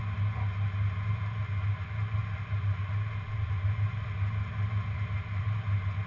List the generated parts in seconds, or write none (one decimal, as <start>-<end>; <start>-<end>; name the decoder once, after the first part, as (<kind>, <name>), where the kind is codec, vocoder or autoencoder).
none